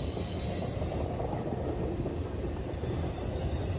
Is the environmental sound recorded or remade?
remade